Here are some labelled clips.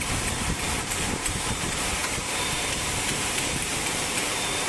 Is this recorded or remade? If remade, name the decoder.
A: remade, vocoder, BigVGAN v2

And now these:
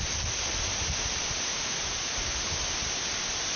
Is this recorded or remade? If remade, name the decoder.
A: recorded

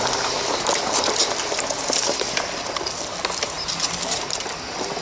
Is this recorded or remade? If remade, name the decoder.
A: recorded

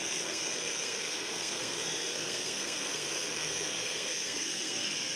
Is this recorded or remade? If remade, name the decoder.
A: remade, codec, SNAC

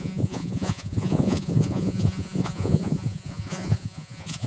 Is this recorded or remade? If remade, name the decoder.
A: remade, vocoder, Vocos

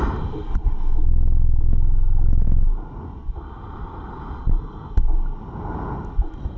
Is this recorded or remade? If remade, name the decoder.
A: recorded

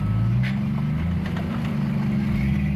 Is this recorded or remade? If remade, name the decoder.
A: recorded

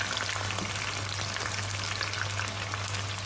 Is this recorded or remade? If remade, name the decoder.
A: recorded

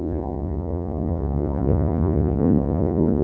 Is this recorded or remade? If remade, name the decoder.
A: remade, vocoder, Vocos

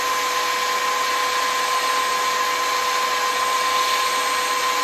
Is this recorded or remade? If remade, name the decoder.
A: recorded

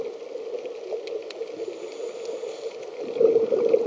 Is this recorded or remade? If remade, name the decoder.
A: recorded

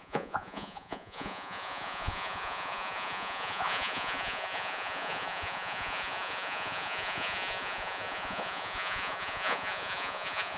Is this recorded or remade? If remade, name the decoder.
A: remade, vocoder, Vocos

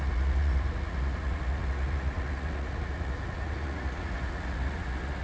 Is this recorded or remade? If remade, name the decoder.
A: remade, vocoder, Vocos